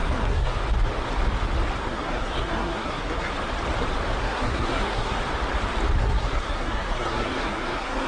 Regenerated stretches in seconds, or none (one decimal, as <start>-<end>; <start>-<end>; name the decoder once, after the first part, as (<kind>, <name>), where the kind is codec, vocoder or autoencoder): 0.0-0.6 (codec, SNAC); 1.8-3.3; 4.2-5.2; 6.0-8.1